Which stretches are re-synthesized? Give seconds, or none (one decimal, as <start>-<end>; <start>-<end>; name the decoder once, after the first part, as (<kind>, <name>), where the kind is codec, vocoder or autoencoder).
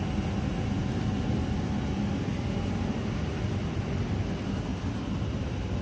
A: none